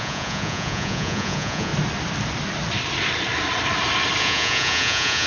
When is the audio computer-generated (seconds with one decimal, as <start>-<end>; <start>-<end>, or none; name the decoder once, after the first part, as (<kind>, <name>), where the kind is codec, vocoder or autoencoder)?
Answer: 0.0-1.7 (vocoder, Vocos); 4.2-5.3